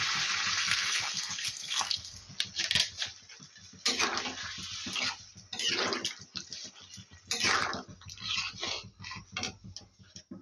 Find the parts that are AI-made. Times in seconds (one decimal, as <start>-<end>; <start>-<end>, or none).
0.6-2.3